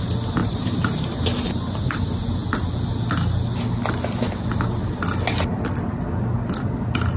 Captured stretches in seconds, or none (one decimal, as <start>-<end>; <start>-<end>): 0.0-0.4; 1.8-7.2